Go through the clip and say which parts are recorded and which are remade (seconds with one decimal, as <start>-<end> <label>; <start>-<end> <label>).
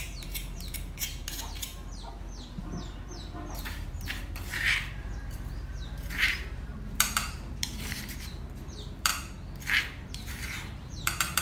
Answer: 0.0-1.7 remade; 1.7-2.6 recorded; 2.6-9.1 remade; 9.1-9.8 recorded; 9.8-11.4 remade